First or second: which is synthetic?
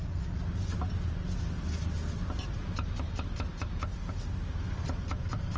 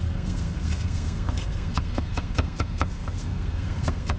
second